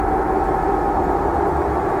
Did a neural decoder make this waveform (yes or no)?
no